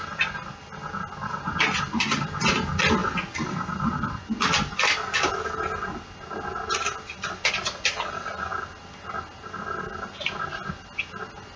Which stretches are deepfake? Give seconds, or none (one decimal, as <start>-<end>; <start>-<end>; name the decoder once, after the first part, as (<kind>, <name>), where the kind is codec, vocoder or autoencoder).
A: 0.0-0.6 (vocoder, BigVGAN v2)